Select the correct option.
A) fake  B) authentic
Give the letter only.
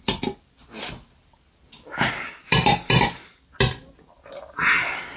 B